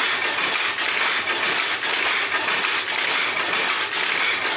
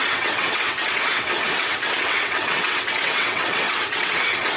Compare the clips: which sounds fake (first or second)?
second